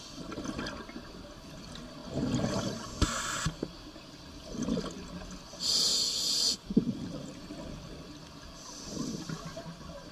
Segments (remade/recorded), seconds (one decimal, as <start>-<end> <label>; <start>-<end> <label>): 0.0-10.1 recorded